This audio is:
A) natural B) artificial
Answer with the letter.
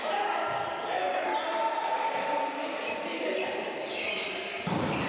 A